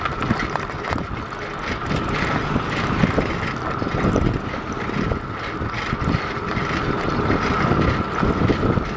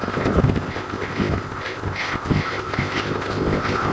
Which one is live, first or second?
first